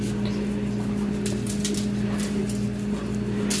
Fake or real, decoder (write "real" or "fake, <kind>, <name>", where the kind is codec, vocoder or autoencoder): real